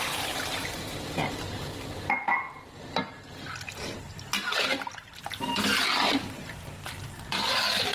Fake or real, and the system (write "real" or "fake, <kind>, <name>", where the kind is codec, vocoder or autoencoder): real